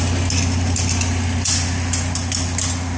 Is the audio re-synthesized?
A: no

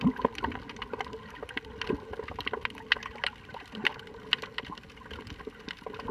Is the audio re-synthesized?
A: no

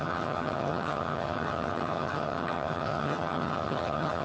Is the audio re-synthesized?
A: yes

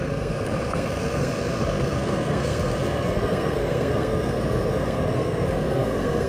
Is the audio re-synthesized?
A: yes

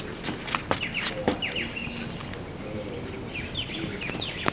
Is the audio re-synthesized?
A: no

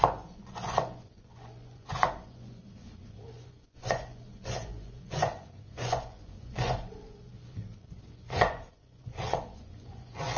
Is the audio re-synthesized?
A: yes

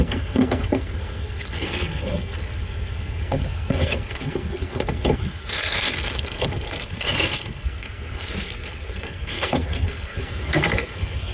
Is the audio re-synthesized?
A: yes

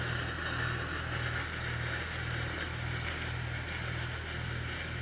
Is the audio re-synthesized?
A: no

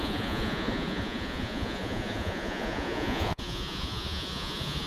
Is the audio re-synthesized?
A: yes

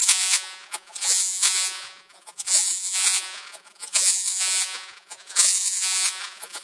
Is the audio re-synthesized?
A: yes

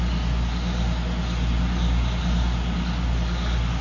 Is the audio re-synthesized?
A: no